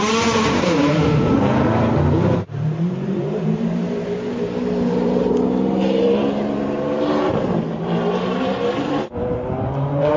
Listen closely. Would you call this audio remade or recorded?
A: remade